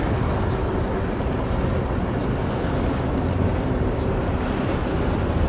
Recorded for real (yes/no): yes